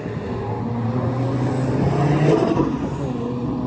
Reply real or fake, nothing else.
real